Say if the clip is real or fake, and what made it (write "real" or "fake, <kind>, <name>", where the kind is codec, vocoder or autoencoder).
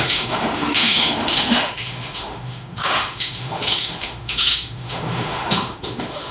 fake, autoencoder, DAC-VAE